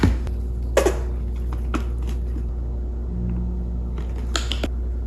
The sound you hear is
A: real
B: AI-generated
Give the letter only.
A